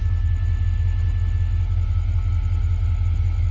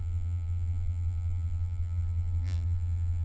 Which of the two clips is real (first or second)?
first